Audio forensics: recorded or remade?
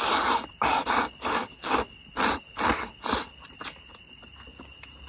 recorded